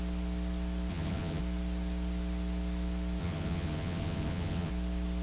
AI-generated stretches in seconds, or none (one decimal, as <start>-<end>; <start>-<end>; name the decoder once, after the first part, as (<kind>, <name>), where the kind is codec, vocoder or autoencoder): 0.9-1.4 (vocoder, HiFi-GAN); 3.2-4.7

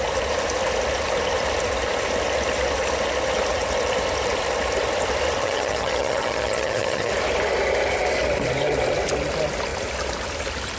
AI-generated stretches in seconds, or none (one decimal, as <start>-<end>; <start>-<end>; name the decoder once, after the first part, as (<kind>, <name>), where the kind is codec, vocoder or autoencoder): 5.4-7.1 (vocoder, HiFi-GAN)